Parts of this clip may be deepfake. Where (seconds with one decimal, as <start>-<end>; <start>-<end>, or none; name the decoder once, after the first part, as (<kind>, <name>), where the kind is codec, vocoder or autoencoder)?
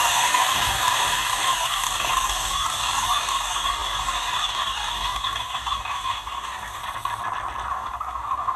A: 0.0-6.8 (codec, DAC); 7.7-8.6